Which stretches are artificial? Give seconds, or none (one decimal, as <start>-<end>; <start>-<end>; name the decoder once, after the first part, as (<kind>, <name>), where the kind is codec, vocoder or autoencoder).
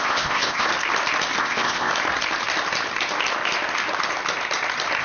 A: 0.0-0.7 (codec, ZipCodec); 1.4-1.9